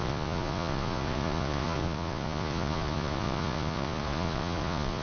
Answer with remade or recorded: remade